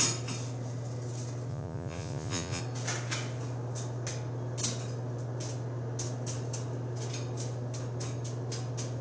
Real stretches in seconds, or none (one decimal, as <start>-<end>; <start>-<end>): 0.0-1.5; 2.6-9.0